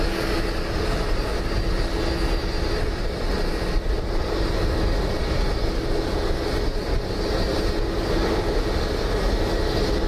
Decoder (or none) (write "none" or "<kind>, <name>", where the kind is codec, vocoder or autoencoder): none